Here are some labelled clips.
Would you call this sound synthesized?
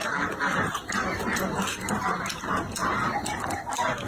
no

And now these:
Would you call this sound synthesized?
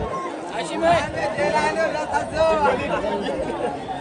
no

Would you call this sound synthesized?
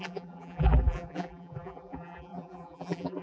yes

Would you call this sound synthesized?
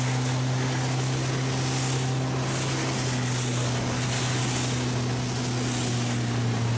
no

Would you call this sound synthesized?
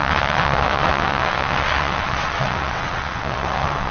yes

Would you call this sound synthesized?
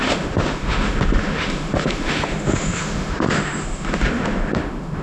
yes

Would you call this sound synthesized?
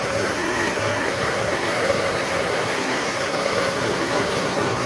yes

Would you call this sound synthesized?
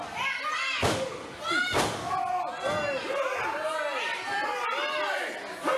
no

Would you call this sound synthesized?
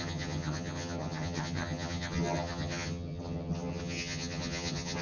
yes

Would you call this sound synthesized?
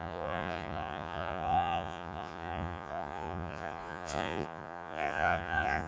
yes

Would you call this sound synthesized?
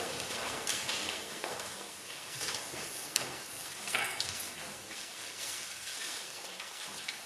yes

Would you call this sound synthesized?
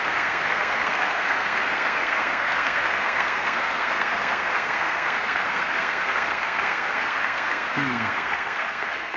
yes